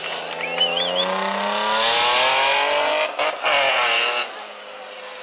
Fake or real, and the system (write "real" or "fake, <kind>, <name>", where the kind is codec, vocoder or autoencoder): real